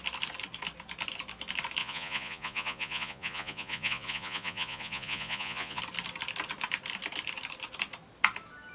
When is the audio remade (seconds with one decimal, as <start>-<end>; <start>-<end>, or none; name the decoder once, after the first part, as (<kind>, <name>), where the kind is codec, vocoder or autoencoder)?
1.8-5.8 (vocoder, Vocos)